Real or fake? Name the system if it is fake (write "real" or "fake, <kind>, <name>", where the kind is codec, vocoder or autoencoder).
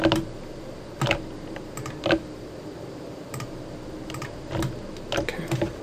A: real